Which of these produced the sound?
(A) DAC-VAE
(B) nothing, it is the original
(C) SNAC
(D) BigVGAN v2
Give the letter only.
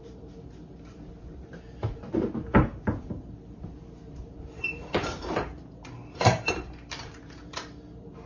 D